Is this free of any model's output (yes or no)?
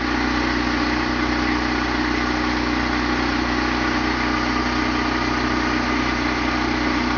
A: yes